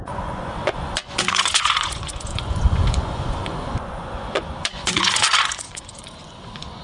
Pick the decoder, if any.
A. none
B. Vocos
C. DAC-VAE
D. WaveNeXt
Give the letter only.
B